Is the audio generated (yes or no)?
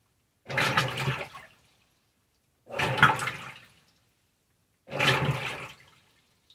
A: no